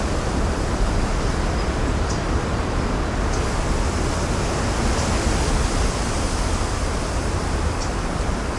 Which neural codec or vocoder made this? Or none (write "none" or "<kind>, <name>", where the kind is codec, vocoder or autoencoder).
none